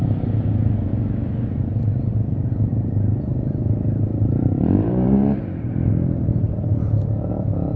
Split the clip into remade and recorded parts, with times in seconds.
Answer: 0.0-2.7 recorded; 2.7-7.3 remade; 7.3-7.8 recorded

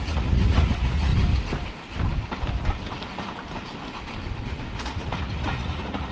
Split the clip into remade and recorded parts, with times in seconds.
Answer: 0.0-1.1 remade; 1.1-4.4 recorded; 4.4-6.1 remade

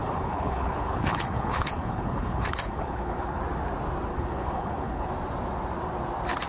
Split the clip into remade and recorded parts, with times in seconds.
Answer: 0.0-3.4 remade; 3.4-4.1 recorded; 4.1-5.1 remade; 5.1-6.5 recorded